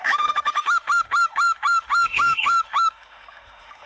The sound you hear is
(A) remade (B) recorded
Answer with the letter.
A